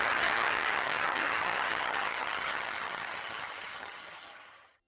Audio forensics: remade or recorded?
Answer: remade